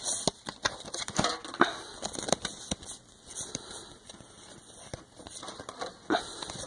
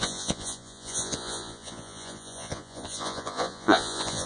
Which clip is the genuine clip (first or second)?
first